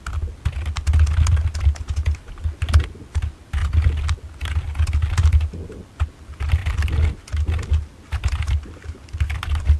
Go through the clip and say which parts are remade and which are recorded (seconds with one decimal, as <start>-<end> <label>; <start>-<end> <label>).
0.0-9.8 recorded